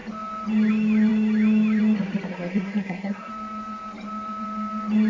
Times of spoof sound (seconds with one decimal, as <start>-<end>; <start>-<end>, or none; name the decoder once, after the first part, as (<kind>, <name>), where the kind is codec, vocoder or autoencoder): 2.3-3.3 (codec, SNAC)